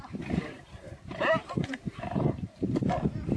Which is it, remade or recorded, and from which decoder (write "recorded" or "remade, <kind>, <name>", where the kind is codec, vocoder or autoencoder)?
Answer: remade, vocoder, BigVGAN v2